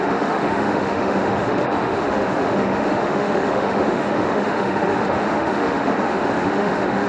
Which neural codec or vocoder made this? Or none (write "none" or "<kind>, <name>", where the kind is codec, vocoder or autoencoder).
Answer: autoencoder, DAC-VAE